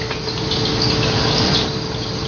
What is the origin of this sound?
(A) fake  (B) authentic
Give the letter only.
B